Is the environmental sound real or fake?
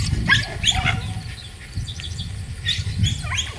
real